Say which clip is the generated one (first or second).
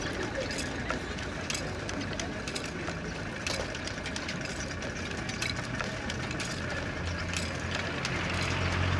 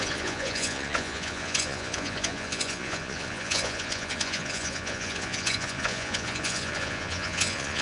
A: second